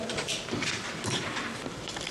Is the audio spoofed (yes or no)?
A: yes